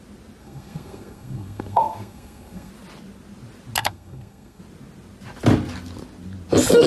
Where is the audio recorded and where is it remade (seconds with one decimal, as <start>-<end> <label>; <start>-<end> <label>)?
0.0-0.4 recorded; 0.4-2.7 remade; 2.7-3.8 recorded; 3.8-4.6 remade; 4.6-6.9 recorded